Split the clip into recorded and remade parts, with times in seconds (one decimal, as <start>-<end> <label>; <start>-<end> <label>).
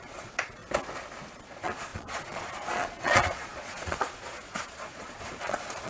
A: 0.0-0.6 remade; 0.6-1.3 recorded; 1.3-5.9 remade